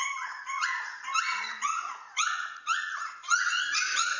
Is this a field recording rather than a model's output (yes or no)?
no